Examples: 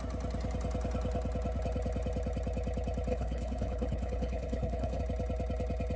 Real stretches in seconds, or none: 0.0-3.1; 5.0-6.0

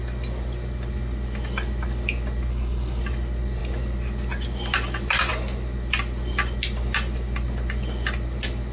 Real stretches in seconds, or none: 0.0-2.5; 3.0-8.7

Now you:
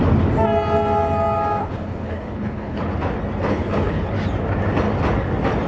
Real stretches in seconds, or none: 0.0-1.6; 2.9-3.5; 4.1-5.7

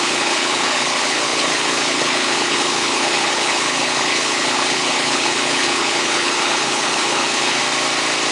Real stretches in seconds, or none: 7.6-8.3

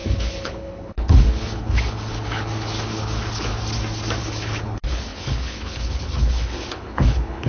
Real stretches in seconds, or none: 3.5-4.2

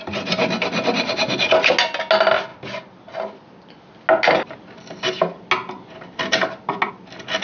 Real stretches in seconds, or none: 0.0-7.4

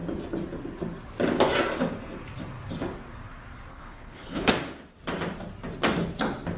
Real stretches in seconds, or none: 0.0-3.7; 4.5-6.6